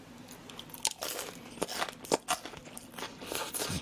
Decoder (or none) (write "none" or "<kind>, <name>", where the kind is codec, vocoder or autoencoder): none